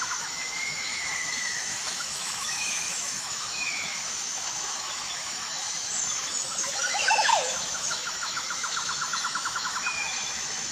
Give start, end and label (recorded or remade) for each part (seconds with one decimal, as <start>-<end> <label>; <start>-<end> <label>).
0.0-10.7 remade